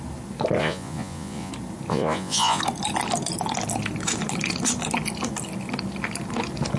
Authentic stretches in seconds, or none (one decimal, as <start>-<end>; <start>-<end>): 0.0-0.6; 1.5-1.9; 2.6-6.8